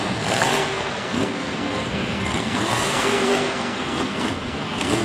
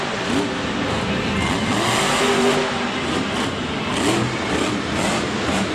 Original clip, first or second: second